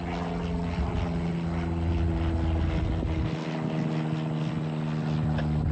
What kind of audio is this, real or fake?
real